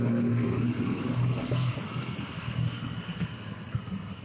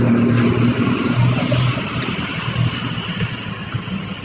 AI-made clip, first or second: first